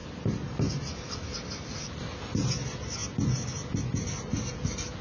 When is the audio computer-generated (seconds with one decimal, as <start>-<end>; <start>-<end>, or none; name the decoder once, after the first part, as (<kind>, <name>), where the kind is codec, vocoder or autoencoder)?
none